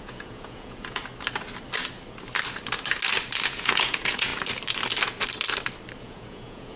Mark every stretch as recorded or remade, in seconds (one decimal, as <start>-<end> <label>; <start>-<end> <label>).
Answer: 0.0-1.0 remade; 1.0-3.5 recorded; 3.5-4.3 remade; 4.3-6.0 recorded; 6.0-6.8 remade